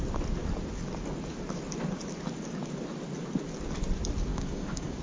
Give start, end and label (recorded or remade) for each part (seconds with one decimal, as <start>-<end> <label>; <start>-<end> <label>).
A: 0.0-4.3 recorded; 4.3-5.0 remade